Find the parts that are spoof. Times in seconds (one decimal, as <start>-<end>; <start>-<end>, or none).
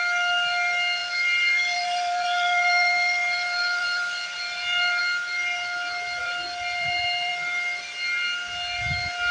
1.0-5.0; 6.2-7.3